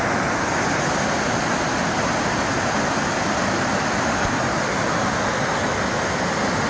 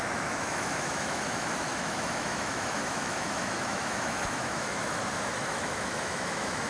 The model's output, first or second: second